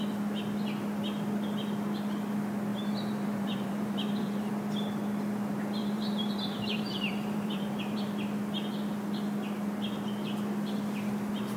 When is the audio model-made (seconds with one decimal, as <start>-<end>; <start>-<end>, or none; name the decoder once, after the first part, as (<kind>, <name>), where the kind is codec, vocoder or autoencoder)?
2.7-4.5 (vocoder, BigVGAN v2); 5.8-8.1